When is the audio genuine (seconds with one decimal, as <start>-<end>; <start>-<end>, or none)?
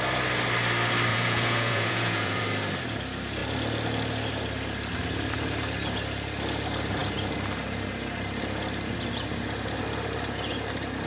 0.0-1.1; 2.4-11.1